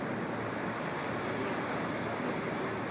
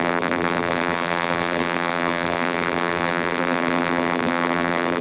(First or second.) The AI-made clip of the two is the second